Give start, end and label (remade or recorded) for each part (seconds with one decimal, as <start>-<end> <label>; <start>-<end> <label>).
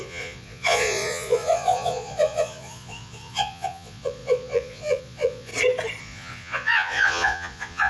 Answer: 0.0-5.5 remade; 5.5-6.0 recorded; 6.0-7.9 remade